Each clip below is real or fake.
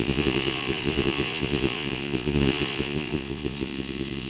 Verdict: fake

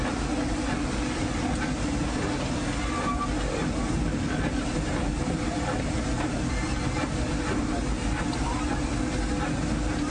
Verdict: real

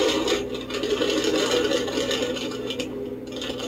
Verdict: real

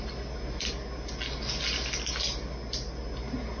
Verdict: real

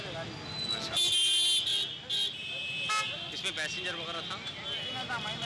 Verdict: real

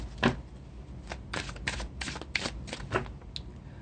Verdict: real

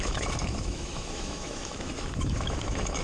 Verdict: fake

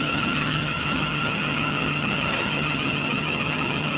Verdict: fake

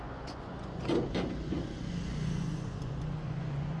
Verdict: fake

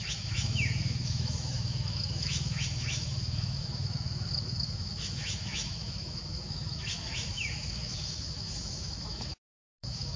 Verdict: fake